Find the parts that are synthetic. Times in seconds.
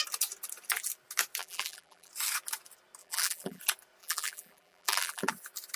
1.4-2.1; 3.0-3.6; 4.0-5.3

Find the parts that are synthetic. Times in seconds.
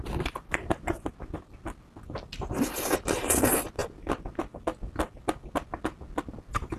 none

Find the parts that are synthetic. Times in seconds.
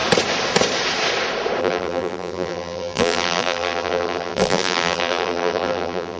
1.6-6.2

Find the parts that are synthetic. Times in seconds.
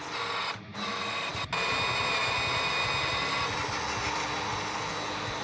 0.4-0.9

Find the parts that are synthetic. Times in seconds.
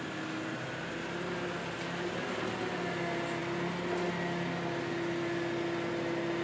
none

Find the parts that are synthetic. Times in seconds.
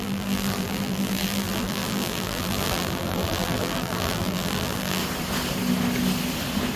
0.0-5.0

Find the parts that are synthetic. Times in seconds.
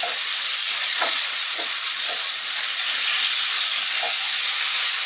0.6-3.7